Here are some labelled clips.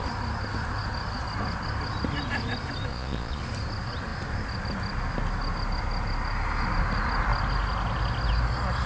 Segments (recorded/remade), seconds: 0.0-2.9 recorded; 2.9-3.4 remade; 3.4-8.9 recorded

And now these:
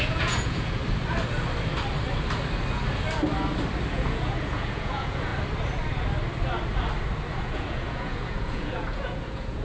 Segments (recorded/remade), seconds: 0.0-0.8 remade; 0.8-3.9 recorded; 3.9-5.3 remade; 5.3-7.4 recorded; 7.4-9.6 remade

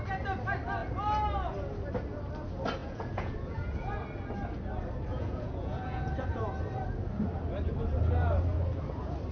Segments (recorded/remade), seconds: 0.0-2.8 recorded; 2.8-3.9 remade; 3.9-5.1 recorded; 5.1-6.4 remade; 6.4-9.3 recorded

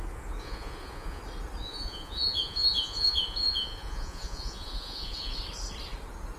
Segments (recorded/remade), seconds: 0.0-0.4 recorded; 0.4-1.2 remade; 1.2-1.6 recorded; 1.6-5.4 remade; 5.4-6.4 recorded

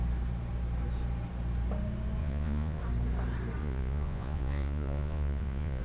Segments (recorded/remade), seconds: 0.0-2.2 recorded; 2.2-2.8 remade; 2.8-3.6 recorded; 3.6-5.8 remade

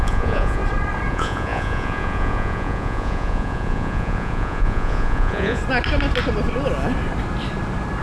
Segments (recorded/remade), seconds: 0.0-0.6 remade; 0.6-1.1 recorded; 1.1-5.6 remade; 5.6-8.0 recorded

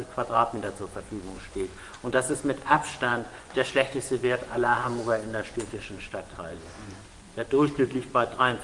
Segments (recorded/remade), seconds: 0.0-6.5 remade; 6.5-7.1 recorded; 7.1-8.6 remade

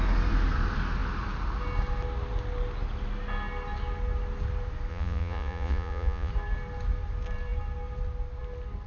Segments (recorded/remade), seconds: 0.0-4.9 recorded; 4.9-6.3 remade; 6.3-8.9 recorded